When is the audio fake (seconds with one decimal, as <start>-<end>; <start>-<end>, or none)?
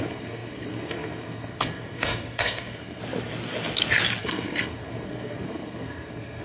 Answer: 0.0-3.0; 4.2-6.4